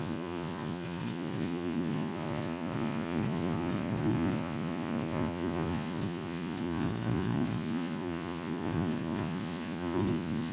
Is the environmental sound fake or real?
fake